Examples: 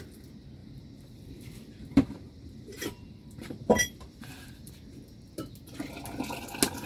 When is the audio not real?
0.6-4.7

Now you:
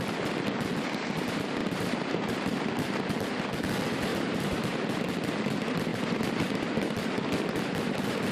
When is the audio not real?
1.6-2.7; 4.1-4.6

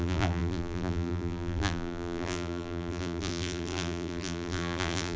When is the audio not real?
0.0-5.2

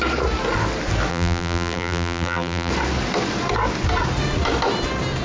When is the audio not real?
1.1-2.7

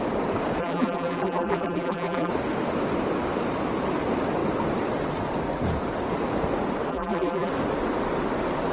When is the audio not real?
0.6-2.3; 6.9-7.5

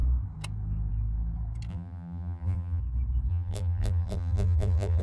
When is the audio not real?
1.7-2.8; 3.3-5.0

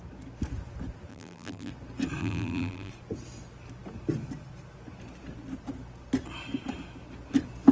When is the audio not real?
1.1-1.7; 2.2-2.9

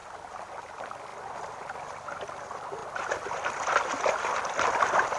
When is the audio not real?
0.0-1.1; 1.9-5.2